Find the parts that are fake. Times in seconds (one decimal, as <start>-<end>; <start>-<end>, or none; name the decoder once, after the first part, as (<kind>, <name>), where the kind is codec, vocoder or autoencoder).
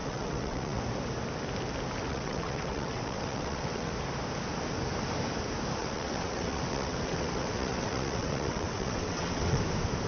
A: 0.0-0.8 (vocoder, WaveNeXt); 2.1-3.9; 5.8-9.6